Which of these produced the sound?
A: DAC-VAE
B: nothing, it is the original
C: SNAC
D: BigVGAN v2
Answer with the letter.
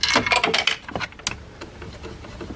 B